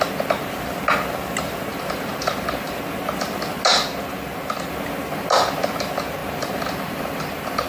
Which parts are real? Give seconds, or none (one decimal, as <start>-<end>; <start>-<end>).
0.0-1.7; 2.7-6.2; 7.2-7.7